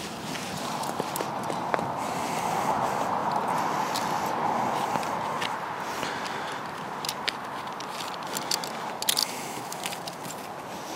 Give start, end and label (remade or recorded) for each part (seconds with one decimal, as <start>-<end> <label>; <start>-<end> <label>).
0.0-9.2 recorded; 9.2-9.8 remade; 9.8-11.0 recorded